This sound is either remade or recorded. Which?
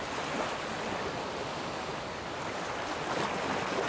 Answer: recorded